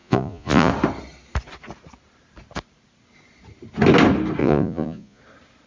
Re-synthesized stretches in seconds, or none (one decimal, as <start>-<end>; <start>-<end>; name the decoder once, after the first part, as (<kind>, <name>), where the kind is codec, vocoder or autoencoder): 0.0-0.7 (vocoder, Vocos); 4.4-5.2